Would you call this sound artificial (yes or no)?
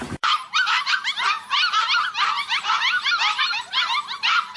yes